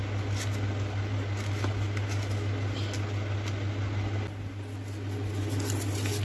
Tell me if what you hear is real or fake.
real